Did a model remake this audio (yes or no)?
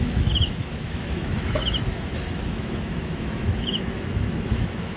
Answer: yes